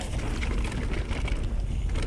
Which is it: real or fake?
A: real